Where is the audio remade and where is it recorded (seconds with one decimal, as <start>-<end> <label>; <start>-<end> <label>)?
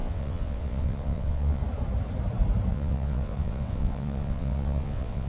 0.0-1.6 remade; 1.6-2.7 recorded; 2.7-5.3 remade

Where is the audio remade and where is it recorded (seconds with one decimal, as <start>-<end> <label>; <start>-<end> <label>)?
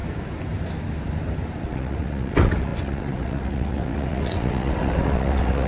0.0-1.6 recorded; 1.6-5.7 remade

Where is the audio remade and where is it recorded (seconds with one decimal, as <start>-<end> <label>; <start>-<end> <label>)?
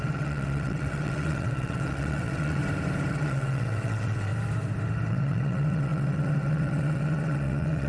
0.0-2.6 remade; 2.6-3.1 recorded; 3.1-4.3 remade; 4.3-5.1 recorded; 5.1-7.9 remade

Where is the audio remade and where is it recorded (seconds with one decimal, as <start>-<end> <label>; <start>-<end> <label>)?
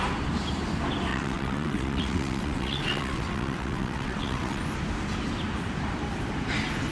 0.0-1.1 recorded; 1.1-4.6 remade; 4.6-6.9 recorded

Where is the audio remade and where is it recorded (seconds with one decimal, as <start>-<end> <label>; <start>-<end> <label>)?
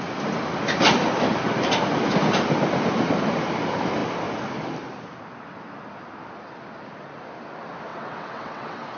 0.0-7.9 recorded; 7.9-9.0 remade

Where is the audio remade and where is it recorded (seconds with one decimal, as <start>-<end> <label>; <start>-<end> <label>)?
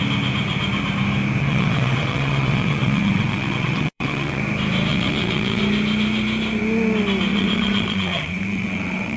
0.0-1.4 recorded; 1.4-4.4 remade; 4.4-4.9 recorded; 4.9-5.6 remade; 5.6-7.3 recorded; 7.3-9.2 remade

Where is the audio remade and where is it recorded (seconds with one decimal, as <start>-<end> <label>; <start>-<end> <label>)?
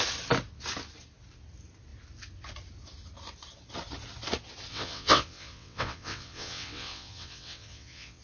0.0-4.7 recorded; 4.7-8.2 remade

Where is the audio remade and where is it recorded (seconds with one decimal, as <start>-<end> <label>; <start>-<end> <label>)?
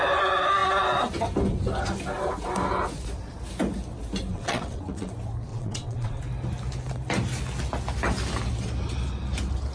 0.0-4.3 recorded; 4.3-5.1 remade; 5.1-5.5 recorded; 5.5-6.2 remade; 6.2-9.7 recorded